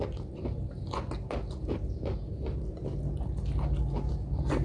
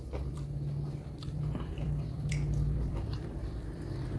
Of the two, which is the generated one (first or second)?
second